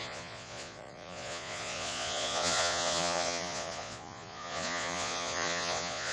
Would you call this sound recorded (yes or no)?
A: no